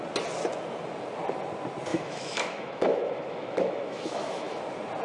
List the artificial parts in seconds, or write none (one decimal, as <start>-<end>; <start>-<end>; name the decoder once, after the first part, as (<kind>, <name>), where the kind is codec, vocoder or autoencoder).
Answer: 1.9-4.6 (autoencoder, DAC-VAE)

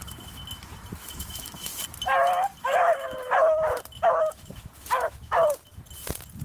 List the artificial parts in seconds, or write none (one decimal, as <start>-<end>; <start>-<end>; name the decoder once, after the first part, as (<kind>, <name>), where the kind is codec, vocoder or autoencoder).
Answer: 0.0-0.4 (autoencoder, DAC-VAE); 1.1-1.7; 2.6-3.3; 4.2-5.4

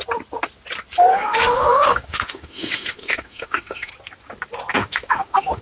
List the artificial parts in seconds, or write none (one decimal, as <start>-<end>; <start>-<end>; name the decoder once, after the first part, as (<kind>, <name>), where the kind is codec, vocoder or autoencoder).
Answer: 1.1-3.9 (autoencoder, DAC-VAE); 4.7-5.6

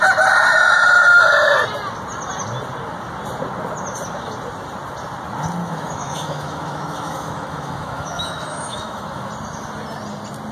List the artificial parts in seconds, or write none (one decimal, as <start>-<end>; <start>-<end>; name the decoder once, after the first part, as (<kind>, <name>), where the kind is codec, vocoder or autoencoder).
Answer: 5.6-9.3 (autoencoder, DAC-VAE)

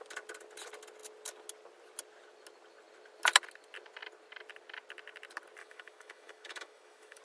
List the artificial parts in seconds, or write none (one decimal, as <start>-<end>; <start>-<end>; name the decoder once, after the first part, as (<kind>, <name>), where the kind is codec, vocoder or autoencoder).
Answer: 5.6-7.2 (autoencoder, DAC-VAE)

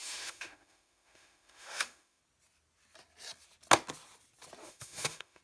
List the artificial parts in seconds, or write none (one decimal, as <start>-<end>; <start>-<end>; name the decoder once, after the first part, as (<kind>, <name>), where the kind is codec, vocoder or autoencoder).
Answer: 0.0-2.2 (autoencoder, DAC-VAE); 4.6-5.4